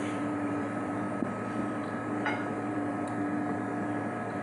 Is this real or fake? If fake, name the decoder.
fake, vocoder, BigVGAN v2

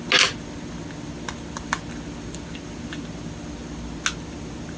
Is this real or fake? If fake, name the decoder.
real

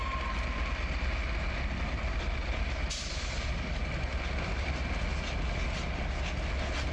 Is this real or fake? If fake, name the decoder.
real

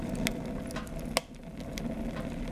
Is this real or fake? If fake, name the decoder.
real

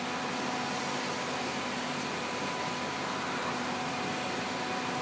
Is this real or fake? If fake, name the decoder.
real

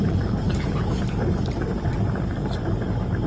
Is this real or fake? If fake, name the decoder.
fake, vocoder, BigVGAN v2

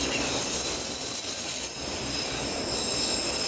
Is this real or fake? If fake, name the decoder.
real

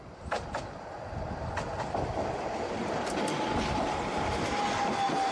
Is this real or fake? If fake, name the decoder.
real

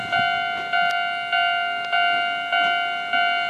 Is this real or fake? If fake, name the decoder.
real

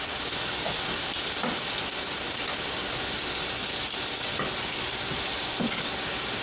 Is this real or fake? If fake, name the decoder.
real